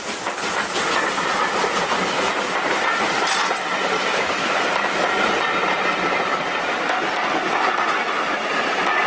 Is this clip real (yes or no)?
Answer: yes